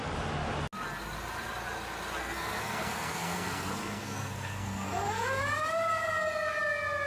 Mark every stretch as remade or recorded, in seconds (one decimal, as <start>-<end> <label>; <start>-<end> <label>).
0.0-2.2 recorded; 2.2-5.4 remade; 5.4-7.1 recorded